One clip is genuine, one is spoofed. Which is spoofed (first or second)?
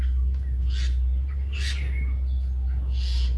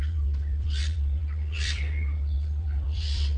second